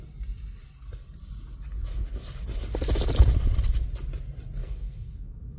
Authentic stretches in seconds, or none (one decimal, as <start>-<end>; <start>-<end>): 0.0-4.6